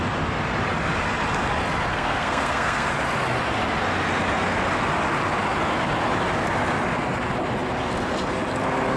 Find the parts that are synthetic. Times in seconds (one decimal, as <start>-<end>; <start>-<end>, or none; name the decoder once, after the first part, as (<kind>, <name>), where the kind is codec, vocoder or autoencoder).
1.9-2.9 (codec, SNAC)